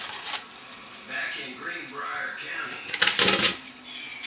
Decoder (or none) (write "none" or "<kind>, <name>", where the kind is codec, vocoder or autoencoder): none